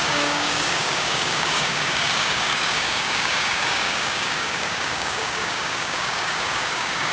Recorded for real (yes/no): no